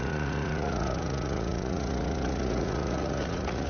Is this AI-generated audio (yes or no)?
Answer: yes